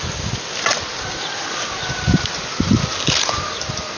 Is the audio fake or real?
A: real